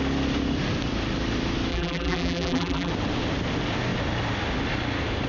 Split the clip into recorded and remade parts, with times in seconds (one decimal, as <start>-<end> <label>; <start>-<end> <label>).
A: 0.0-1.7 recorded; 1.7-2.9 remade; 2.9-5.3 recorded

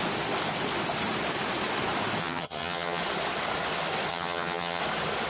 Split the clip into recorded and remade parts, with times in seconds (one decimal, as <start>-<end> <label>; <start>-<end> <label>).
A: 0.0-2.2 recorded; 2.2-3.0 remade; 3.0-4.1 recorded; 4.1-4.8 remade; 4.8-5.3 recorded